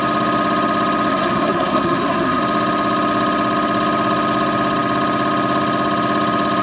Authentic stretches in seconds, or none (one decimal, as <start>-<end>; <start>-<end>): 0.0-1.1; 2.4-6.6